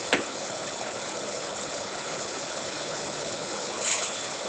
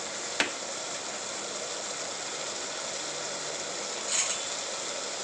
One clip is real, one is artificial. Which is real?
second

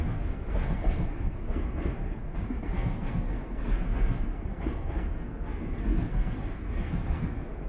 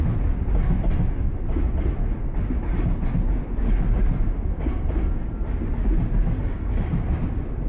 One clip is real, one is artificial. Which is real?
second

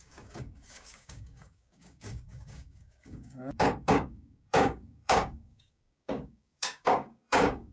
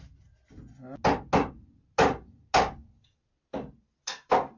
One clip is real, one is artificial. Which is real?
second